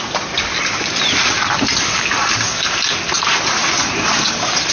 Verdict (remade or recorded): recorded